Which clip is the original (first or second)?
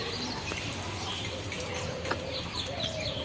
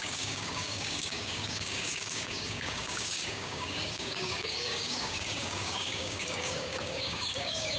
first